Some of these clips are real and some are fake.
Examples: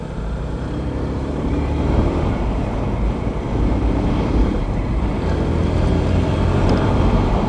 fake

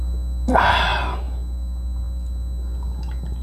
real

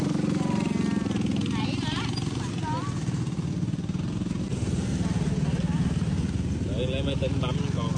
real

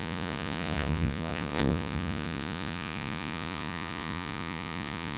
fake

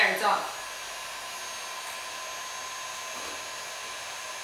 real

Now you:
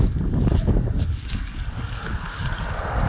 fake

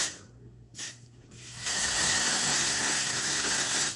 fake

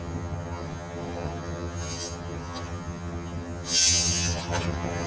fake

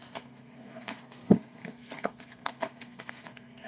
fake